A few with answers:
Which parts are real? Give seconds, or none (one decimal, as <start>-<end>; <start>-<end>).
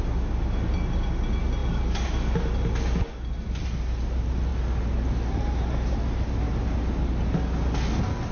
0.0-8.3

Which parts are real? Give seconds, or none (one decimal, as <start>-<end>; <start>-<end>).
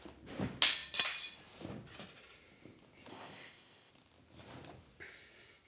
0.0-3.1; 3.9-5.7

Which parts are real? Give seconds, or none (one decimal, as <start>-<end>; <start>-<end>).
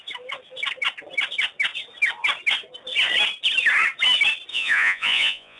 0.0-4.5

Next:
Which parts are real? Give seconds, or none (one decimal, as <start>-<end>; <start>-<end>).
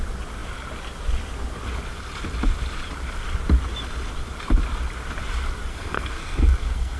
0.0-5.7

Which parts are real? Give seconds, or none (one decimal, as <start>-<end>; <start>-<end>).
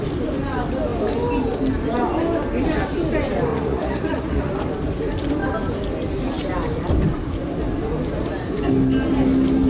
0.0-3.5; 4.5-9.7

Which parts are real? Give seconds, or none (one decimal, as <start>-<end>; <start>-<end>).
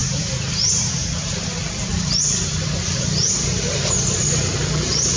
1.9-2.6